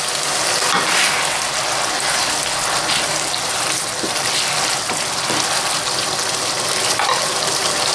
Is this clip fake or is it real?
real